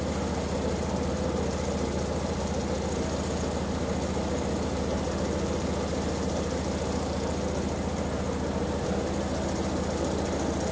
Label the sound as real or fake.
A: real